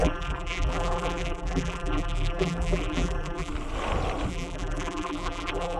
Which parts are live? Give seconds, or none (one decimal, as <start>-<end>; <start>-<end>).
3.5-4.3